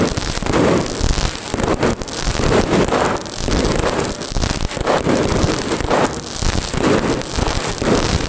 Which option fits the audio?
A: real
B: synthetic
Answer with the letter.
A